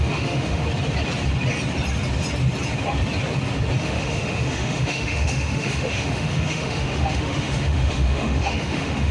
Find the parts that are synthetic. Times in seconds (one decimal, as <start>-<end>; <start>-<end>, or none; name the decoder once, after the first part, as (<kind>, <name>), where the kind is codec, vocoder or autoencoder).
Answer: 0.0-0.6 (autoencoder, DAC-VAE); 3.8-9.1